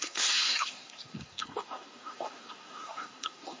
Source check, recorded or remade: remade